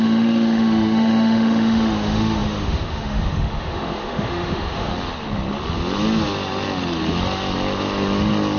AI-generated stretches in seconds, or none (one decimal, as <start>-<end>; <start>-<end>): 0.0-4.9

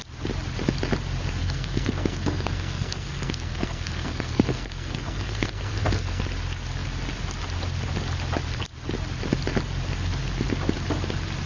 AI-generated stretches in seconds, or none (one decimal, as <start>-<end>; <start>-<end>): 1.4-6.2

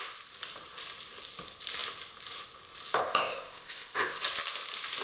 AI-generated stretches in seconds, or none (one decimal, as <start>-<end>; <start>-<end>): 3.0-4.2

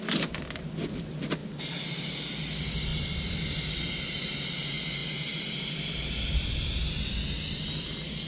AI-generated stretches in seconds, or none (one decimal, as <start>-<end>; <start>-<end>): none

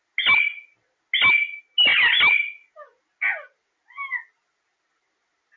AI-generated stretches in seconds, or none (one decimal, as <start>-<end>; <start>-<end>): none

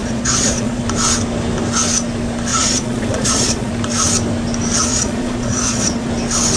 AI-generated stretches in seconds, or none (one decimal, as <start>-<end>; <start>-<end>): 0.0-0.8; 2.5-3.7; 4.9-6.1

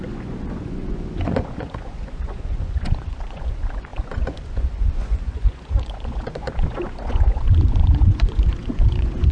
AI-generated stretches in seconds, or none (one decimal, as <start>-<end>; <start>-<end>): 0.0-9.3

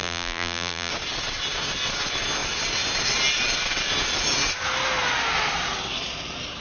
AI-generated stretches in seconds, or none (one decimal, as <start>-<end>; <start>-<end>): 0.0-0.9